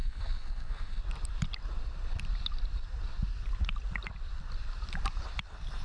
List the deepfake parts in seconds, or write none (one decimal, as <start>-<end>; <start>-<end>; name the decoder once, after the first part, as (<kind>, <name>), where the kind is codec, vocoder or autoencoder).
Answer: 0.0-1.0 (codec, SNAC)